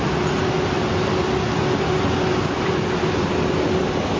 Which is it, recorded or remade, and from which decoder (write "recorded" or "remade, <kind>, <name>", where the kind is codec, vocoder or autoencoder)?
recorded